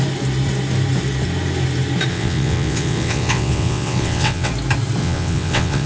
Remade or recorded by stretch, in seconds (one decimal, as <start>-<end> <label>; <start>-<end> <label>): 0.0-2.1 recorded; 2.1-4.5 remade; 4.5-5.0 recorded; 5.0-5.9 remade